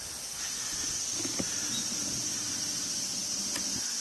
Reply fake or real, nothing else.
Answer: real